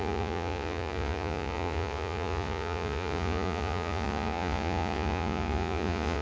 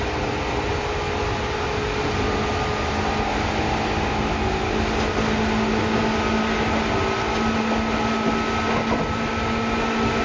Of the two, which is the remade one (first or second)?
first